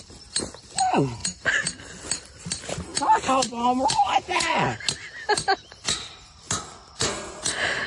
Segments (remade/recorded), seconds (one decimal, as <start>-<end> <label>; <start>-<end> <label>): 0.0-1.2 remade; 1.2-2.4 recorded; 2.4-2.9 remade; 2.9-5.3 recorded; 5.3-6.8 remade; 6.8-7.4 recorded; 7.4-7.9 remade